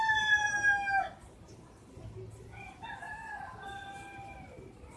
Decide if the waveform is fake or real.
fake